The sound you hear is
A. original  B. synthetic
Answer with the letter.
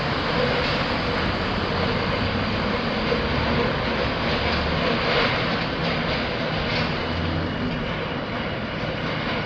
A